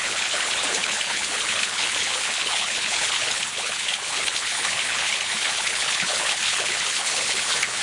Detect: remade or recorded remade